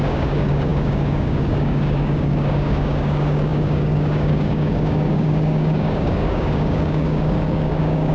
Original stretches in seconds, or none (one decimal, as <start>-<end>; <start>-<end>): none